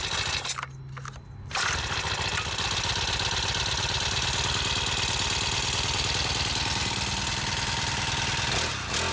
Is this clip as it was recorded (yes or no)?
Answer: yes